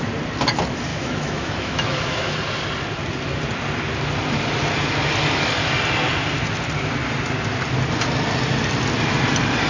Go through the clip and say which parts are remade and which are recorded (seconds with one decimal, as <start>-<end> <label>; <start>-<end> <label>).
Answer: 0.0-0.9 recorded; 0.9-2.3 remade; 2.3-9.7 recorded